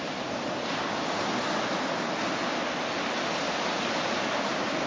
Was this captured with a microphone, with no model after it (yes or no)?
yes